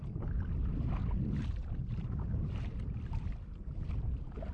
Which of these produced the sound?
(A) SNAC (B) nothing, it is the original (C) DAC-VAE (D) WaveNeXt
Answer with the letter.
B